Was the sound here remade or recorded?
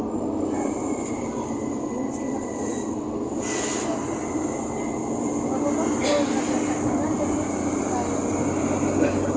recorded